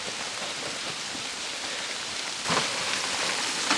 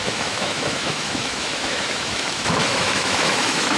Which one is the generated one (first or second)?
second